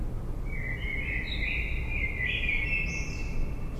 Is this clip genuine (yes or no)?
yes